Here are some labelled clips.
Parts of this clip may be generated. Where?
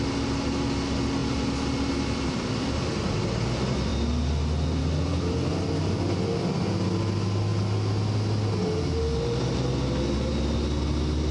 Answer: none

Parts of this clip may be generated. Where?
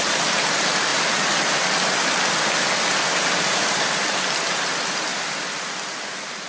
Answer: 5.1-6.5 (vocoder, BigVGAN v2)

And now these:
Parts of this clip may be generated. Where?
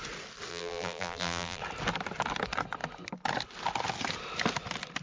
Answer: 0.5-1.6 (vocoder, BigVGAN v2)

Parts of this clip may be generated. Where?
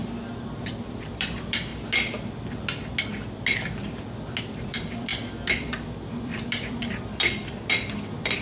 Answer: 1.1-1.7 (vocoder, BigVGAN v2); 4.4-8.4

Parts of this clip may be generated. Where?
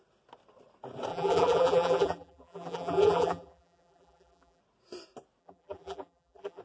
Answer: 1.1-4.6 (vocoder, BigVGAN v2); 5.4-6.6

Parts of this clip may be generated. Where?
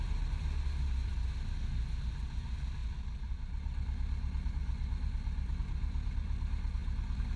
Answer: none